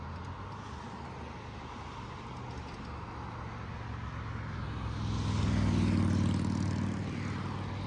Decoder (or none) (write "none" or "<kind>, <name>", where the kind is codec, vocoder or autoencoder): none